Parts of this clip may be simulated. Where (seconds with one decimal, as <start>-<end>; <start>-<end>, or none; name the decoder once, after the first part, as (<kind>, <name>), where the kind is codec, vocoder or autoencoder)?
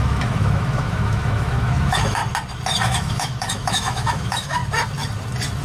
0.0-2.2 (autoencoder, DAC-VAE); 2.8-4.6